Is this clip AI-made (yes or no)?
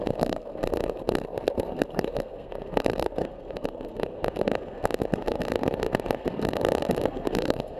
yes